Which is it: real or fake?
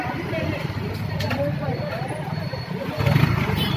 real